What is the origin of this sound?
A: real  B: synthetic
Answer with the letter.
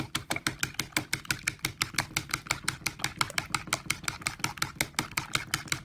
A